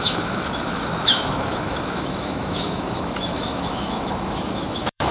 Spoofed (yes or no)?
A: yes